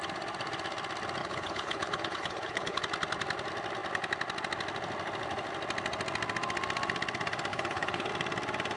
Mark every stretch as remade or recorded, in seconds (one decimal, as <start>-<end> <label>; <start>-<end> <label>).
0.0-1.2 recorded; 1.2-2.8 remade; 2.8-7.5 recorded; 7.5-8.1 remade; 8.1-8.8 recorded